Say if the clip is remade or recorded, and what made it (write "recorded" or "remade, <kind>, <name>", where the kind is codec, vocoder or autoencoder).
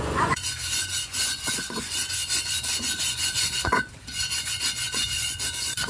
remade, vocoder, Vocos